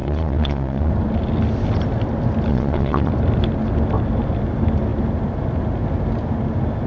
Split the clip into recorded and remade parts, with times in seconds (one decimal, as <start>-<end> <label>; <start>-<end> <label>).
0.0-0.9 remade; 0.9-2.5 recorded; 2.5-3.1 remade; 3.1-6.9 recorded